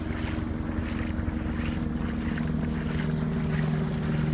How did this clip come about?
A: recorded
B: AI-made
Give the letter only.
A